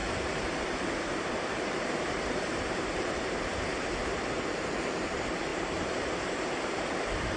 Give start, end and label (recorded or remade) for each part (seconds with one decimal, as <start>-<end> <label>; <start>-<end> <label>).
0.0-4.4 remade; 4.4-5.5 recorded; 5.5-7.4 remade